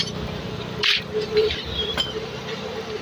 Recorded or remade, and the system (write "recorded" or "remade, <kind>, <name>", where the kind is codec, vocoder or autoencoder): remade, vocoder, BigVGAN v2